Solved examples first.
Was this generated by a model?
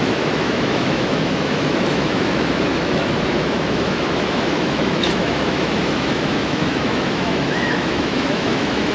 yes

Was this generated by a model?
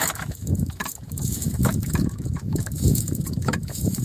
yes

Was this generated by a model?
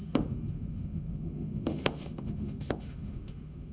yes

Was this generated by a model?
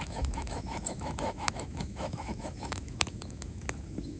yes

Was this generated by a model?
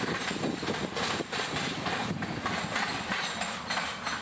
no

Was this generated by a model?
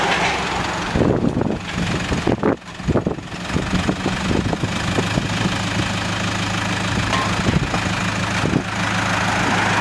no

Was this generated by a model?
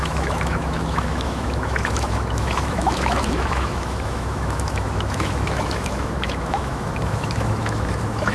yes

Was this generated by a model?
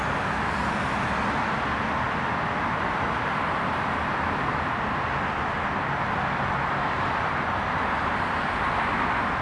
no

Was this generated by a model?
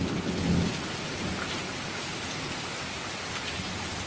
no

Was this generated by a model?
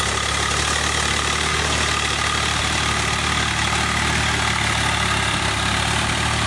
no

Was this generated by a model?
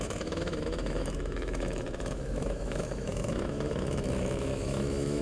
yes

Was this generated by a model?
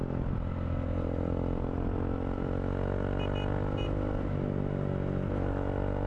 no